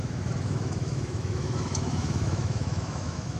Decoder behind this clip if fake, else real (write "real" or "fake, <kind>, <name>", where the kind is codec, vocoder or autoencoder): fake, autoencoder, DAC-VAE